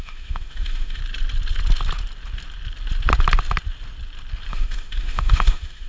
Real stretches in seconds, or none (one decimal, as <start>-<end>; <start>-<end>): 1.0-4.5